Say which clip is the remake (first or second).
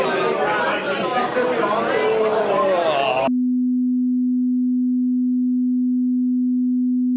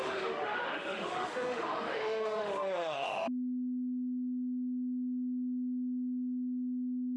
second